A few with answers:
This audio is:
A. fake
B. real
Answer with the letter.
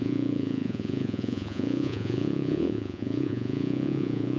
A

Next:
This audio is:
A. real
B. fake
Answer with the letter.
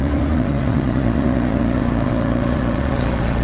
B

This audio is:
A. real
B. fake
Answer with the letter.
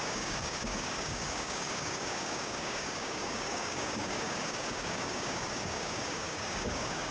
B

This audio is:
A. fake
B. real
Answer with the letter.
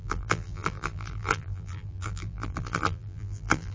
A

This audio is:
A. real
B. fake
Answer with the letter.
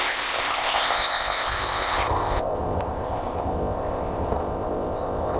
B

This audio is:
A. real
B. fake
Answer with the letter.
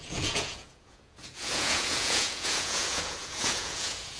B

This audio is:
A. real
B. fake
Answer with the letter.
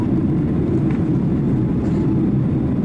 B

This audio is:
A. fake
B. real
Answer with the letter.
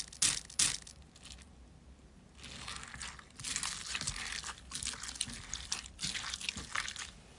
B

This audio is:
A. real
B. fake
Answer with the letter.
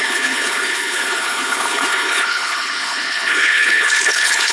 B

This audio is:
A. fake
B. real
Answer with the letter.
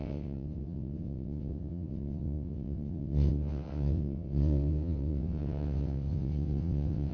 A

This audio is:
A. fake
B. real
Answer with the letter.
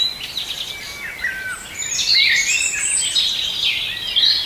B